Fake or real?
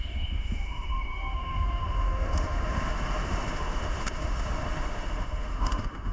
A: fake